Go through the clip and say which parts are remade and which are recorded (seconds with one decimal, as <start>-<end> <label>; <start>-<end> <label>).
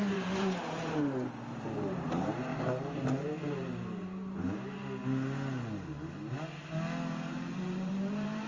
0.0-2.5 remade; 2.5-3.0 recorded; 3.0-4.8 remade; 4.8-7.3 recorded; 7.3-8.5 remade